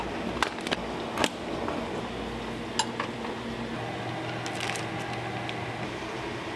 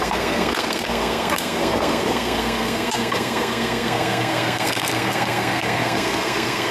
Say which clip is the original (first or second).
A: first